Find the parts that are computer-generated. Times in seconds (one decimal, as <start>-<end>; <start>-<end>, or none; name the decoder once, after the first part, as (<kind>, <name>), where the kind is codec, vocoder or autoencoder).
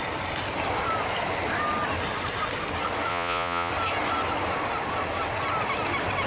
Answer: 3.1-3.7 (vocoder, Vocos)